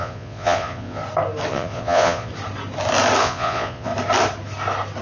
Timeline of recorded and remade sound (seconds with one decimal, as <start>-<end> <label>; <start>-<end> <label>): 0.0-1.0 remade; 1.0-1.5 recorded; 1.5-2.3 remade; 2.3-3.2 recorded; 3.2-3.9 remade; 3.9-5.0 recorded